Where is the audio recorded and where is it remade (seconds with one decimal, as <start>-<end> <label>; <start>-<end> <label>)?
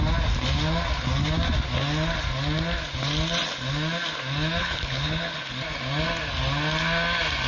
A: 0.0-4.6 recorded; 4.6-5.5 remade; 5.5-7.5 recorded